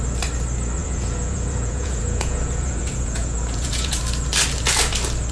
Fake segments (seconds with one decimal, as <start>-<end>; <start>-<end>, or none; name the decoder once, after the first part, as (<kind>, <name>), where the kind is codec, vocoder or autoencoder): 0.8-4.0 (vocoder, Vocos)

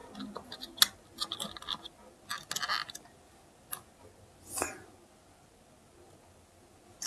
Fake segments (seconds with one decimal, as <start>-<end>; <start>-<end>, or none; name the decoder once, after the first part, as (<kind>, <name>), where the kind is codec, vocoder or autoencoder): none

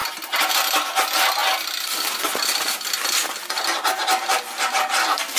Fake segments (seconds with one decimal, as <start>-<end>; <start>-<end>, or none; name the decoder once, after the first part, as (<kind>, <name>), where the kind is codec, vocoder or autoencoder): none

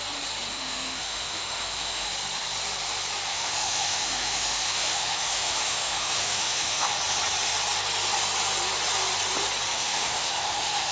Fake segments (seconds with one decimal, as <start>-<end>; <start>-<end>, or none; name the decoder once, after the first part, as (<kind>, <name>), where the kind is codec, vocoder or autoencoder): 0.5-2.1 (autoencoder, DAC-VAE); 3.3-7.0; 9.7-10.9